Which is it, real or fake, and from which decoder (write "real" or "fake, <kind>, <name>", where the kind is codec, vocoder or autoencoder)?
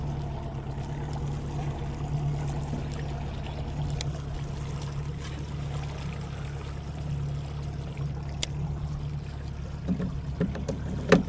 real